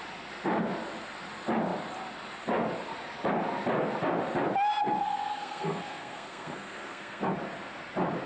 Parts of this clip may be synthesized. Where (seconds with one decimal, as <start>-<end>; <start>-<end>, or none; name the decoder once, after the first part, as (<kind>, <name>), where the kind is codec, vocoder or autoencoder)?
5.0-7.2 (codec, SNAC)